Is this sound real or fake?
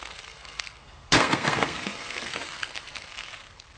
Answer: fake